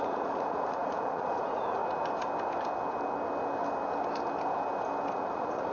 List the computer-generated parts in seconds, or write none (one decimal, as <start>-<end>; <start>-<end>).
0.0-1.8; 5.2-5.7